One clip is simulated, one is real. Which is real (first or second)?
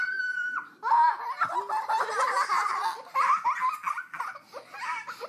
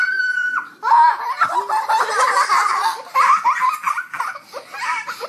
first